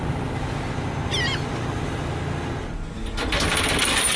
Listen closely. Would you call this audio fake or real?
real